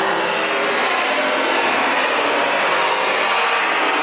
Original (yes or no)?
yes